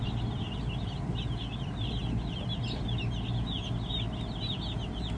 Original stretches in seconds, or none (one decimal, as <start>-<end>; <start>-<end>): 0.0-5.2